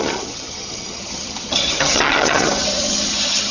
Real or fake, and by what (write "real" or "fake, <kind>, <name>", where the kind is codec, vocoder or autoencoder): fake, vocoder, HiFi-GAN